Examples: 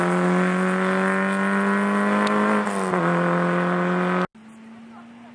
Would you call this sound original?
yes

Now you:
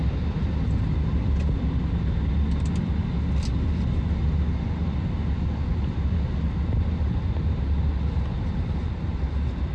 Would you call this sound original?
yes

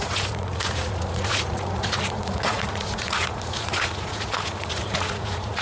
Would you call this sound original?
no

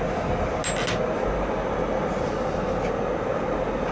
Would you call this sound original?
yes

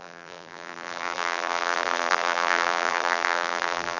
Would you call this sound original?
no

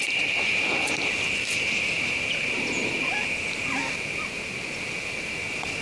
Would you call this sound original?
yes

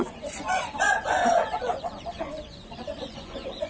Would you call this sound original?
no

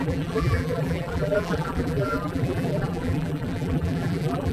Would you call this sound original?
no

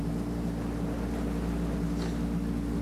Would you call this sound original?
yes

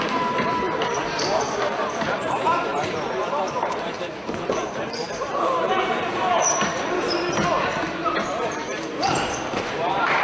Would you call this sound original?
no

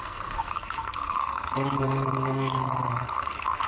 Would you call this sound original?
no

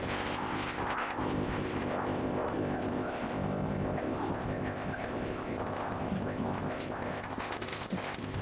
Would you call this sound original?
no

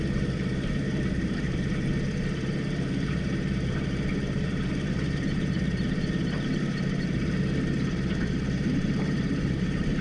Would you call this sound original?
no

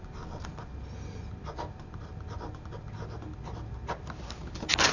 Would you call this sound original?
yes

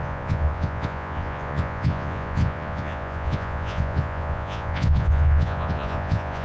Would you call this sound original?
no